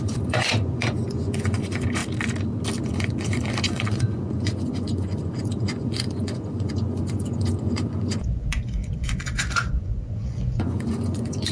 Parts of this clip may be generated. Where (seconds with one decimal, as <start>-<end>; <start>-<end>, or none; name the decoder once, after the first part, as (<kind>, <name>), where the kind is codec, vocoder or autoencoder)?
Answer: 0.0-2.0 (vocoder, Vocos); 2.8-11.5